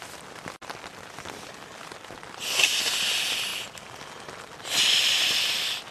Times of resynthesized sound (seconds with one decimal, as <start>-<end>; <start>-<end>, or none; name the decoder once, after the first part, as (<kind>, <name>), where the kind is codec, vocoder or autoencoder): none